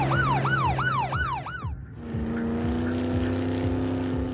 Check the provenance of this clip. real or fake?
real